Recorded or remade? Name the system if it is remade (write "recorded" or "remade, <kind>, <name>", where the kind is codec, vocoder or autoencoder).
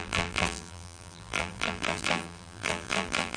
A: remade, vocoder, BigVGAN v2